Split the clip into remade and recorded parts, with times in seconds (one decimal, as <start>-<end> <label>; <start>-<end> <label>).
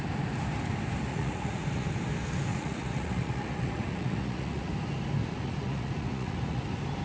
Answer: 0.0-1.1 recorded; 1.1-1.9 remade; 1.9-2.5 recorded; 2.5-4.7 remade; 4.7-5.2 recorded; 5.2-6.6 remade; 6.6-7.0 recorded